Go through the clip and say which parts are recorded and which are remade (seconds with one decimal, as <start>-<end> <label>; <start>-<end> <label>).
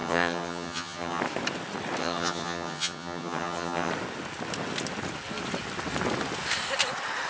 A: 0.0-1.2 remade; 1.2-2.0 recorded; 2.0-3.9 remade; 3.9-7.3 recorded